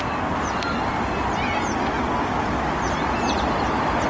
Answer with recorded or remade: recorded